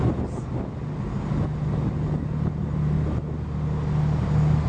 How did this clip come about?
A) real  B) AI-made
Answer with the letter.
A